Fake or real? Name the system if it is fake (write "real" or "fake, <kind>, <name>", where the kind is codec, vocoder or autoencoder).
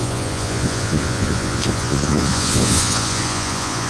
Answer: fake, vocoder, Vocos